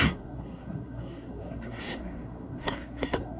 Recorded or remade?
remade